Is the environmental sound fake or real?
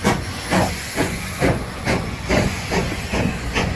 fake